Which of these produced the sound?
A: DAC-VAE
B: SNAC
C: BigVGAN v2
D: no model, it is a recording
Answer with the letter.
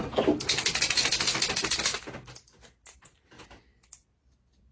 D